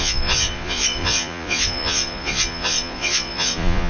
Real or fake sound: fake